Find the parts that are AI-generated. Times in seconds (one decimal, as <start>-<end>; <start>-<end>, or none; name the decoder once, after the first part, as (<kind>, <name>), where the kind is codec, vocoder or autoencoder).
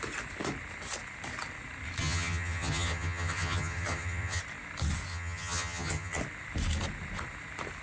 2.0-4.4 (vocoder, HiFi-GAN); 5.1-6.2